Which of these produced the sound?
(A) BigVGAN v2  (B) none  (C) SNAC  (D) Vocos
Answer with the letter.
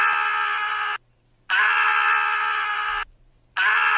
A